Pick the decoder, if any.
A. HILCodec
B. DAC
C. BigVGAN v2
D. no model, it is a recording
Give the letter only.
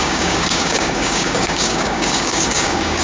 B